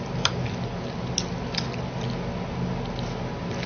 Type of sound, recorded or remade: recorded